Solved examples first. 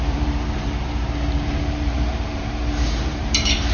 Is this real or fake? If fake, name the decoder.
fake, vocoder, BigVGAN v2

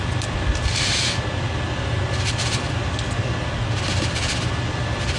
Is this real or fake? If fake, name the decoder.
real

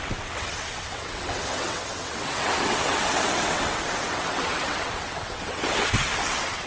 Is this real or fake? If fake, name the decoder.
fake, vocoder, WaveNeXt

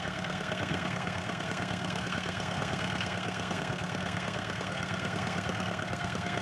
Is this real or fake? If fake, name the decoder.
fake, codec, SNAC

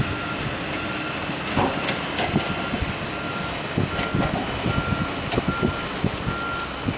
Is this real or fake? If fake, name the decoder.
real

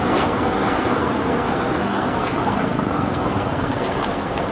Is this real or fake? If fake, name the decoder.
fake, codec, SNAC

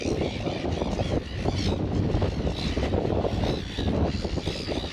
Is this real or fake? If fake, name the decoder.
real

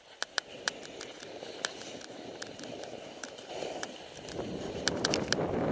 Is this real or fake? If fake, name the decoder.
real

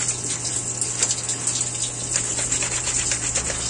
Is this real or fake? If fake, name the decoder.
real